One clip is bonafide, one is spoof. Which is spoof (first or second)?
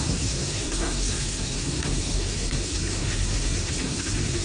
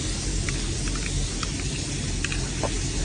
first